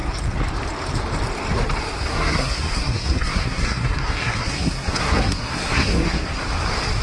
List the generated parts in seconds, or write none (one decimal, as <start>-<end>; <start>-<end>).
2.1-6.3